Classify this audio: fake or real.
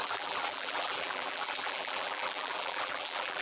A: fake